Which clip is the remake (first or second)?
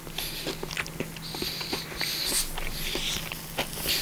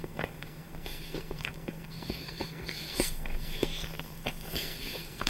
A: second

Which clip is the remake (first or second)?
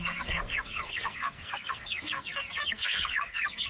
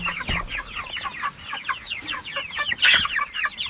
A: first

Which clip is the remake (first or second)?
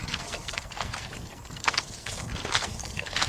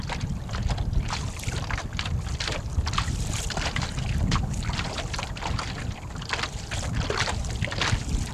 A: first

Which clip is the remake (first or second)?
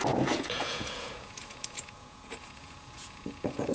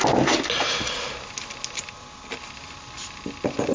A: first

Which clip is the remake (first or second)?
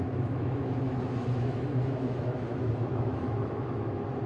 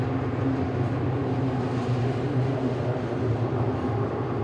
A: first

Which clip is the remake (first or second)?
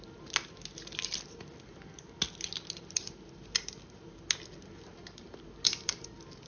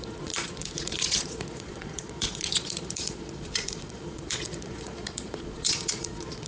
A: second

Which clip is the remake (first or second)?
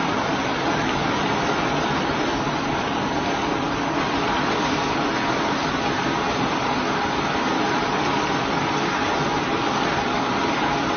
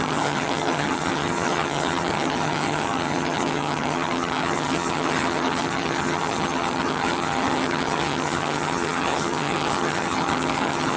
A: second